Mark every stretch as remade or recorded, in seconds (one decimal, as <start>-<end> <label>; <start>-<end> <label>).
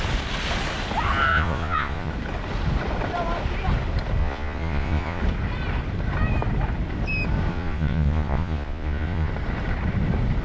0.0-1.3 recorded; 1.3-2.1 remade; 2.1-4.2 recorded; 4.2-5.2 remade; 5.2-7.5 recorded; 7.5-9.3 remade; 9.3-10.4 recorded